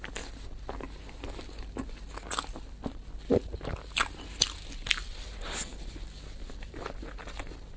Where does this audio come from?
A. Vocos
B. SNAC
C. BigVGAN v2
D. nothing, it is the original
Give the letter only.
D